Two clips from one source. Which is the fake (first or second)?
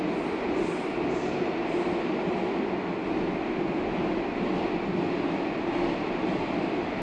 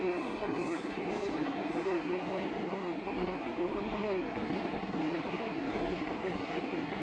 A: second